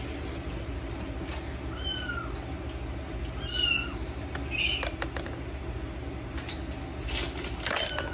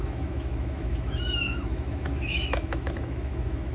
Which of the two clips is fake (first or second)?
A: second